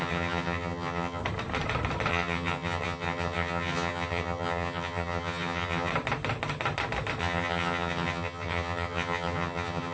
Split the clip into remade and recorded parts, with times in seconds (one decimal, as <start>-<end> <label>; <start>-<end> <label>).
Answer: 0.0-1.2 remade; 1.2-2.1 recorded; 2.1-5.9 remade; 5.9-7.2 recorded; 7.2-9.9 remade